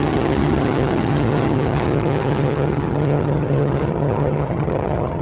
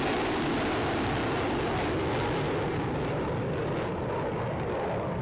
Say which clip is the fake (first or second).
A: first